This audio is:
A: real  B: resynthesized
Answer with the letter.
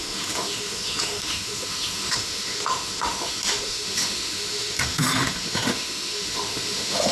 B